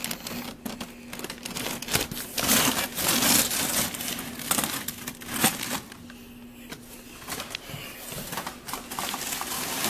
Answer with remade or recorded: recorded